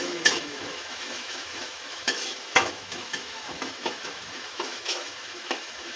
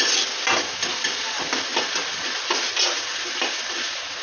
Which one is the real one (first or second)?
second